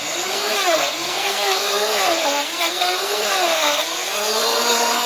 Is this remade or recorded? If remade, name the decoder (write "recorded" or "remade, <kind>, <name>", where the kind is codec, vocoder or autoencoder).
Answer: remade, codec, SNAC